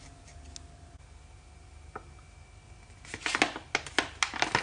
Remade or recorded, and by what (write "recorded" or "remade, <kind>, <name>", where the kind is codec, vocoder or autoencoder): recorded